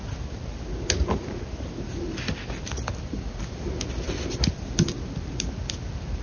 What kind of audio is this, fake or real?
real